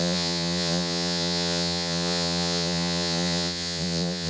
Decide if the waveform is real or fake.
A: fake